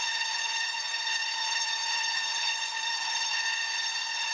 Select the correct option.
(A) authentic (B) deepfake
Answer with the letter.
B